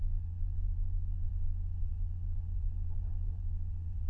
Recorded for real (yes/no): no